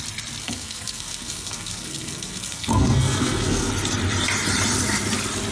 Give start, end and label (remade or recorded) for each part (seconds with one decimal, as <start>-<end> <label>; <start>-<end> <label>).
0.0-0.4 recorded; 0.4-3.7 remade; 3.7-5.5 recorded